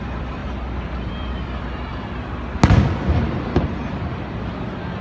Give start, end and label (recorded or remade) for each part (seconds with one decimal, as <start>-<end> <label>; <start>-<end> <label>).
0.0-0.4 remade; 0.4-1.1 recorded; 1.1-1.9 remade; 1.9-4.5 recorded; 4.5-5.0 remade